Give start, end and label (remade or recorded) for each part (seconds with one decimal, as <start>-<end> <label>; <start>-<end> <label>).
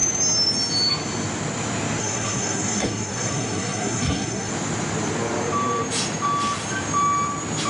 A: 0.0-2.0 recorded; 2.0-4.5 remade; 4.5-7.7 recorded